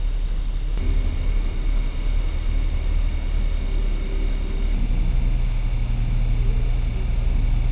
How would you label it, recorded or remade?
recorded